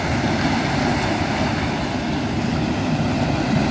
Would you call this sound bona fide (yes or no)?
yes